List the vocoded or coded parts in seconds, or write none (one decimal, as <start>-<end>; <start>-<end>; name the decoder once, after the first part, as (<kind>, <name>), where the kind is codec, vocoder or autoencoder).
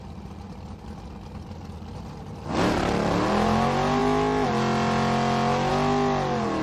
none